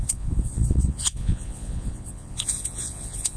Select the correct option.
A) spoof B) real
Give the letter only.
A